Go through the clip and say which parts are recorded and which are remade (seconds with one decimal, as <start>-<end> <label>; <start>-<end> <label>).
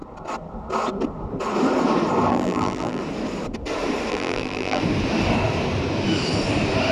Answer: 0.0-2.3 recorded; 2.3-3.0 remade; 3.0-4.1 recorded; 4.1-4.8 remade; 4.8-6.9 recorded